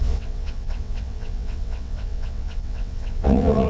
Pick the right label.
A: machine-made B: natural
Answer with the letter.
A